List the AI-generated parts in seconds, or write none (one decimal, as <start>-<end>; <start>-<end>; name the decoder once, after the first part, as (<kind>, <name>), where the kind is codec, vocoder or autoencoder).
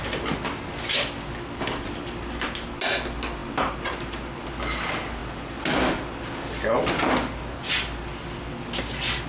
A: none